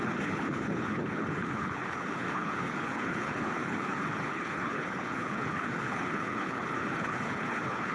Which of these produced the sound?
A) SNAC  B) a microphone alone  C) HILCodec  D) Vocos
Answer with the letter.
C